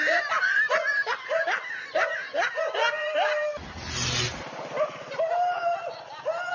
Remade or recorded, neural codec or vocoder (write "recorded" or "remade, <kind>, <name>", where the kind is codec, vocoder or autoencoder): recorded